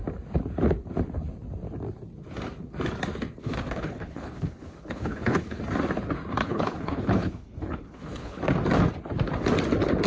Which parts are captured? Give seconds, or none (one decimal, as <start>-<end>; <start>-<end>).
0.0-3.4; 5.6-6.4; 8.4-10.1